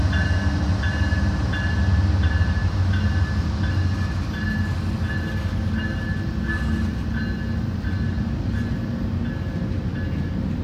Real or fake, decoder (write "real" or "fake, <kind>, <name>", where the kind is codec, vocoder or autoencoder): real